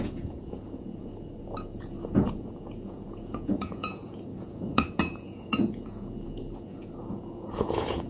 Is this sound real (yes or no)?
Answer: no